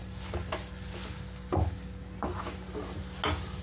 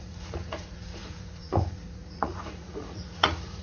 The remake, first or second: second